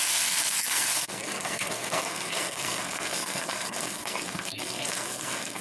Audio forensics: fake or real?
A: fake